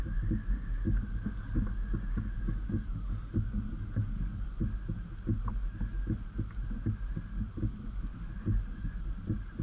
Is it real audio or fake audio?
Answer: real